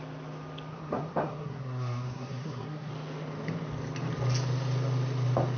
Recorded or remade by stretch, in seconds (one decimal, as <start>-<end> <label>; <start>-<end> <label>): 0.0-0.7 recorded; 0.7-2.9 remade; 2.9-5.6 recorded